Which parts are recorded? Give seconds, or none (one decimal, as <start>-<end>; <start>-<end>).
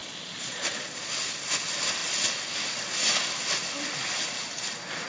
1.1-5.1